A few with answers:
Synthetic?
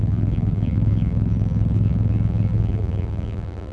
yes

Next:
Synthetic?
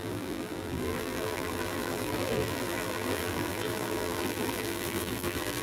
yes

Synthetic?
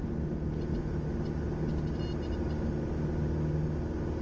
no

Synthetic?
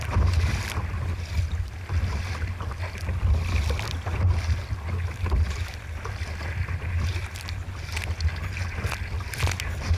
no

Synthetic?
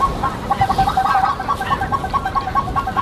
yes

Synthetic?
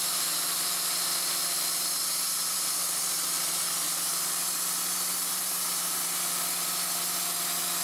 no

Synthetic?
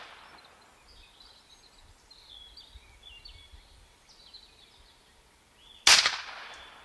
no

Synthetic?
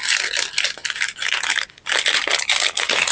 no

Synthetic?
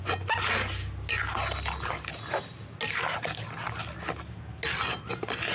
no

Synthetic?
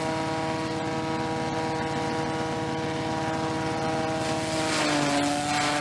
no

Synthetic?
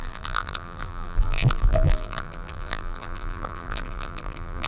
yes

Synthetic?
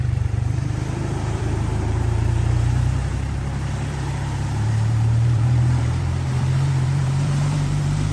yes